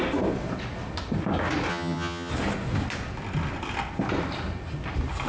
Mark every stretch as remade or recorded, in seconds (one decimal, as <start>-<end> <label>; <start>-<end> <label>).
0.0-1.7 recorded; 1.7-2.3 remade; 2.3-5.3 recorded